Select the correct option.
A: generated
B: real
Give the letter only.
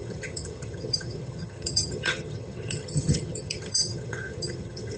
A